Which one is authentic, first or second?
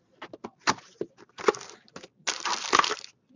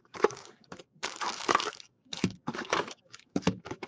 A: first